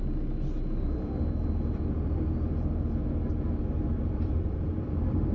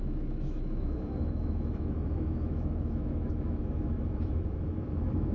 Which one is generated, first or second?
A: second